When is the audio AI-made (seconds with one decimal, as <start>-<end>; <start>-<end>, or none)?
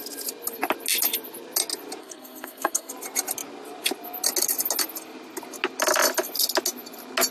2.0-2.9